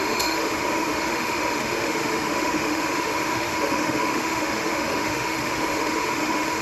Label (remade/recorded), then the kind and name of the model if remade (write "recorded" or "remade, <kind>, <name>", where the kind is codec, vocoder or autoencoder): remade, autoencoder, DAC-VAE